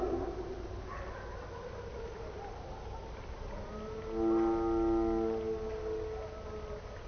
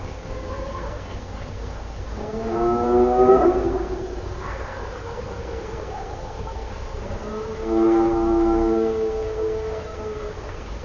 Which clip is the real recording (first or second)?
first